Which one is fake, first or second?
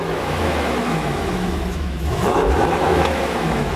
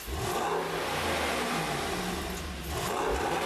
first